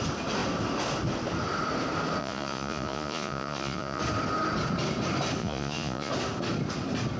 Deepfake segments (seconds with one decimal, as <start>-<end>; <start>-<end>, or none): 2.2-4.0; 5.4-6.1